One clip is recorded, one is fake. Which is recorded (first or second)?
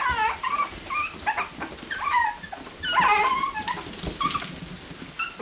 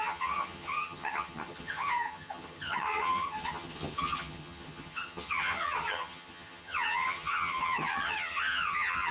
first